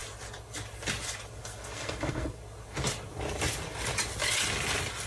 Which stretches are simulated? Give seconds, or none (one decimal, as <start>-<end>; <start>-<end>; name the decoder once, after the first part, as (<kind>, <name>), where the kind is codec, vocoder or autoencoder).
1.4-2.4 (codec, SNAC)